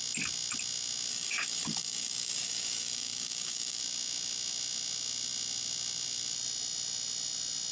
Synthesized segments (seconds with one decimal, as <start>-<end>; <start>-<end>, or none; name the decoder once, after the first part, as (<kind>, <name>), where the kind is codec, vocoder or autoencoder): 1.1-3.8 (codec, DAC)